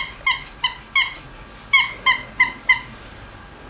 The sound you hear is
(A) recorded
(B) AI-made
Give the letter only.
A